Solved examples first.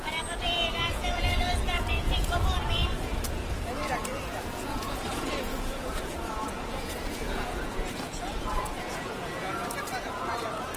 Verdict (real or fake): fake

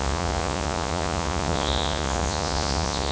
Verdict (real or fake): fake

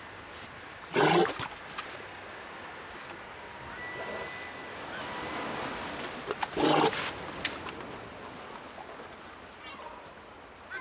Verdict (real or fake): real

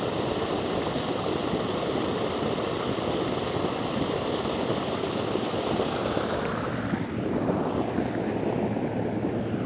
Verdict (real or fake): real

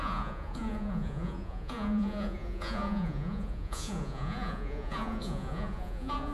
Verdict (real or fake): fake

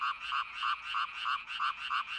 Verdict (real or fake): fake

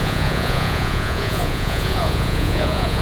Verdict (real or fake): fake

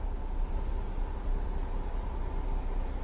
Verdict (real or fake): real